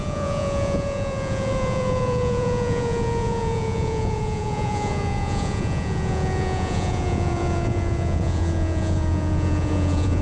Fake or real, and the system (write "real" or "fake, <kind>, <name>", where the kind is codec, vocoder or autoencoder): fake, vocoder, Vocos